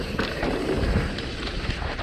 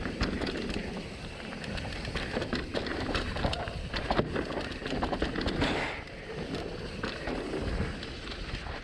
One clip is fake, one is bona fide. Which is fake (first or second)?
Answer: first